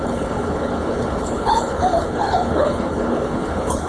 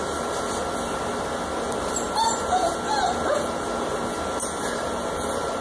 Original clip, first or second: second